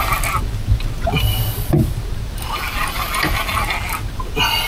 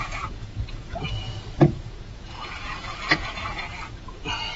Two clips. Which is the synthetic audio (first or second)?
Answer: second